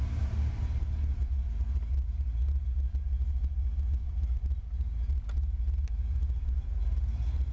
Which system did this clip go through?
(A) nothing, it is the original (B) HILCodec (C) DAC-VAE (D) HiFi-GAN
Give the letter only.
A